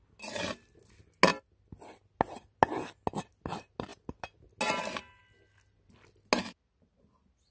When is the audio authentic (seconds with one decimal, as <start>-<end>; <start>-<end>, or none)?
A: 0.0-7.5